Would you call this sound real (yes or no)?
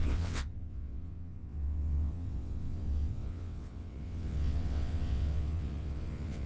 no